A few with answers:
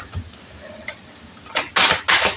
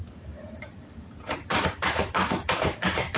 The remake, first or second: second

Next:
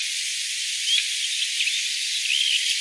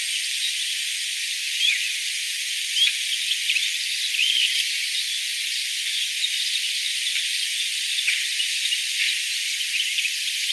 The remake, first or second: second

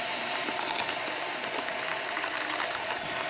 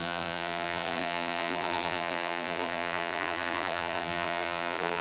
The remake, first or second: second